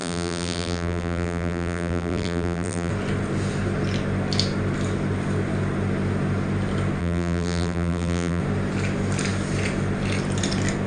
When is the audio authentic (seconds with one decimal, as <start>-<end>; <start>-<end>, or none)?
2.9-7.0; 8.4-10.9